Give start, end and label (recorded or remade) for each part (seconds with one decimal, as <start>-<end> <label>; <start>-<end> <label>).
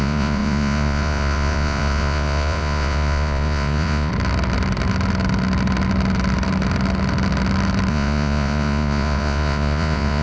0.0-4.1 remade; 4.1-7.9 recorded; 7.9-10.2 remade